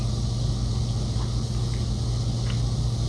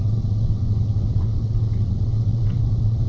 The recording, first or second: first